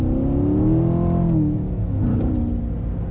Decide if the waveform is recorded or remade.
recorded